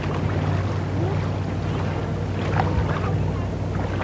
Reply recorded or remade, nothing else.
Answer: recorded